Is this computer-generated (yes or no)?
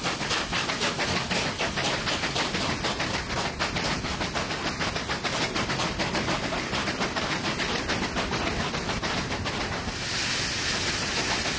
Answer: no